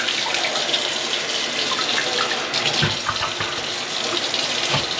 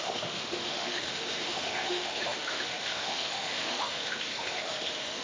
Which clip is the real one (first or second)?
first